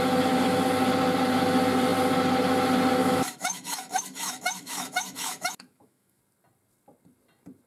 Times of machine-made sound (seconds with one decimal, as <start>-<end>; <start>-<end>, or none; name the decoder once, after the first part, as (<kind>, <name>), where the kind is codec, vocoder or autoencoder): 3.0-6.2 (autoencoder, DAC-VAE)